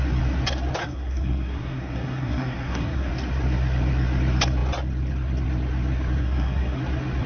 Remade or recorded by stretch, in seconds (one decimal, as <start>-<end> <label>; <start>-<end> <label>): 0.0-0.8 recorded; 0.8-3.1 remade; 3.1-6.2 recorded; 6.2-6.8 remade; 6.8-7.3 recorded

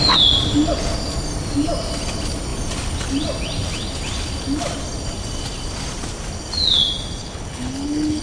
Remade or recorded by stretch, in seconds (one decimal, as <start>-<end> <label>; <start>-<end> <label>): 0.0-7.2 recorded; 7.2-8.2 remade

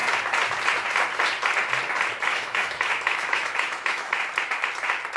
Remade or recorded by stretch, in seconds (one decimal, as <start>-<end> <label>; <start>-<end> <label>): 0.0-2.3 recorded; 2.3-4.2 remade; 4.2-5.2 recorded

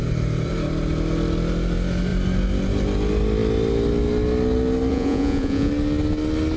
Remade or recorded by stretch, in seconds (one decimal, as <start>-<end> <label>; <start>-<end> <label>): 0.0-4.9 recorded; 4.9-5.7 remade; 5.7-6.6 recorded

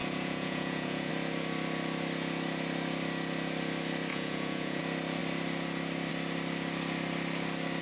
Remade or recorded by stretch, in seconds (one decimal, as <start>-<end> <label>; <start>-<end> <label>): 0.0-1.1 remade; 1.1-4.1 recorded; 4.1-4.8 remade; 4.8-7.8 recorded

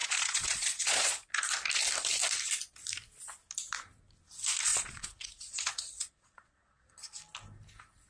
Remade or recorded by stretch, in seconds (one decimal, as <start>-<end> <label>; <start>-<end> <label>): 0.0-1.1 remade; 1.1-4.7 recorded; 4.7-6.9 remade; 6.9-8.1 recorded

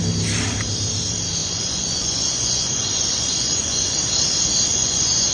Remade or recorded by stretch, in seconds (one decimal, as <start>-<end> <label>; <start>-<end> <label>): 0.0-1.4 recorded; 1.4-4.0 remade; 4.0-4.7 recorded; 4.7-5.3 remade